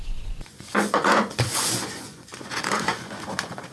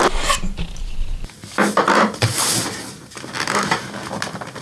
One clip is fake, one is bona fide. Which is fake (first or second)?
first